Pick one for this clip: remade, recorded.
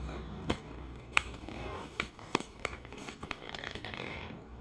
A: remade